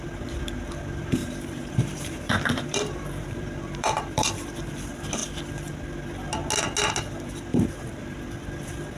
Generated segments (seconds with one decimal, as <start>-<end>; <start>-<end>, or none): 1.2-4.3; 7.5-8.2